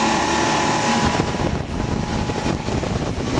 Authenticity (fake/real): real